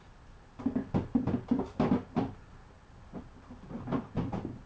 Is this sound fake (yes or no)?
no